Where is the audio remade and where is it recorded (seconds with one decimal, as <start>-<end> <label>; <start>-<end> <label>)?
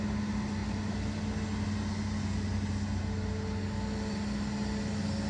0.0-5.3 recorded